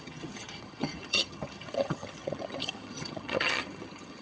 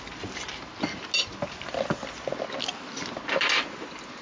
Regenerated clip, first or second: first